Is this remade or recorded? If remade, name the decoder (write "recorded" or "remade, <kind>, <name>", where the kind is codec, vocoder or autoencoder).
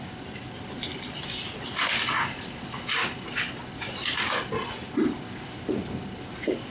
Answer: recorded